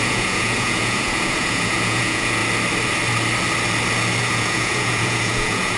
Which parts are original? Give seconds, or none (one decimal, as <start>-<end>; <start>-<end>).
2.4-4.2